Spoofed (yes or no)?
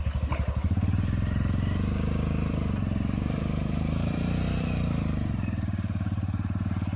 yes